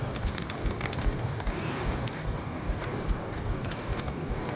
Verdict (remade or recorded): remade